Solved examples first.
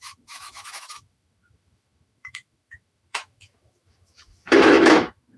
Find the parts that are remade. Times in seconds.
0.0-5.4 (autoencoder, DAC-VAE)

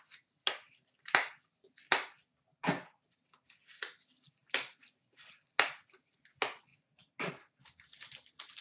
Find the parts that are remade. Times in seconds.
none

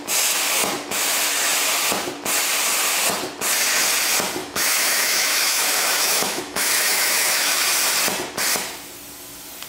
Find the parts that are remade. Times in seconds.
4.4-7.6 (autoencoder, DAC-VAE)

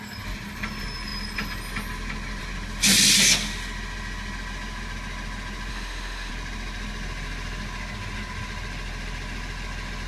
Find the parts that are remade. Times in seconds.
5.7-6.3 (autoencoder, DAC-VAE)

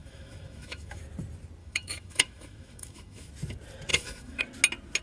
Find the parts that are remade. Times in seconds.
0.0-1.0 (autoencoder, DAC-VAE); 1.6-3.3; 3.9-4.4

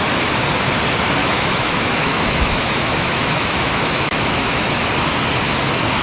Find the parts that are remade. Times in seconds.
1.2-4.8 (autoencoder, DAC-VAE)